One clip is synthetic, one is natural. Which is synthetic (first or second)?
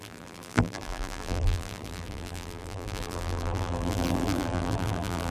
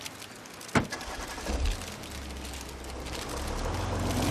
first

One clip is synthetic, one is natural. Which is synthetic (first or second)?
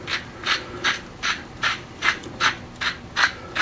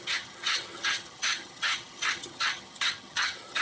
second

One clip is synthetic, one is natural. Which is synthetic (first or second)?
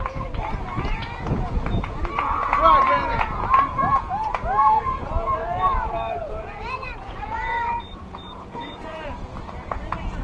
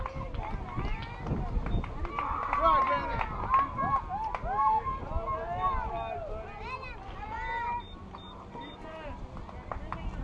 first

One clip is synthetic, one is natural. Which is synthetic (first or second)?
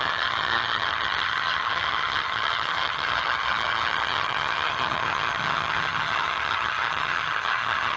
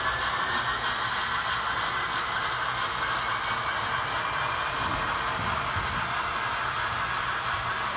first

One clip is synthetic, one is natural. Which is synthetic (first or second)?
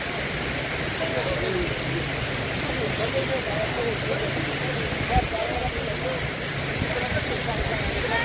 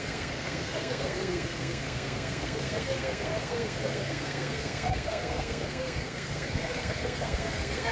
second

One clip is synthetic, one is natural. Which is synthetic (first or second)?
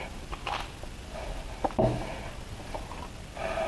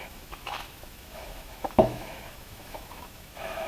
second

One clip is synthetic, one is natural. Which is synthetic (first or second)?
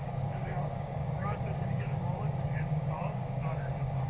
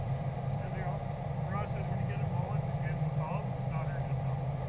first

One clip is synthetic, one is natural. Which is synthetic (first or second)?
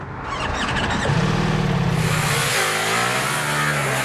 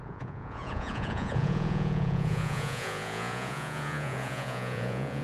second